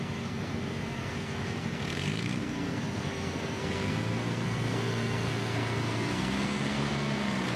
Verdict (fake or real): fake